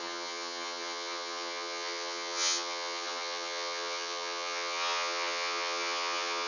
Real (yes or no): no